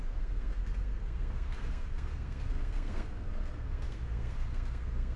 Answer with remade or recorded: remade